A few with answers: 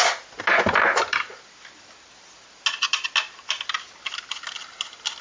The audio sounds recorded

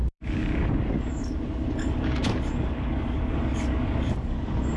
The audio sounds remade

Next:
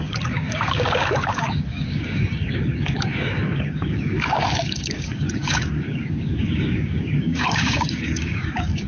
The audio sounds remade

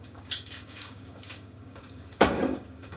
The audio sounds remade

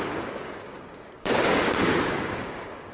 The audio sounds remade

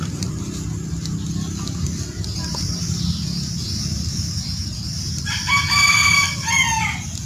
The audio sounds recorded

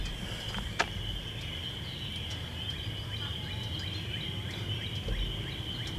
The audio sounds recorded